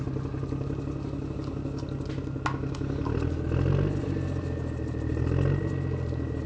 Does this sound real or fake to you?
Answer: real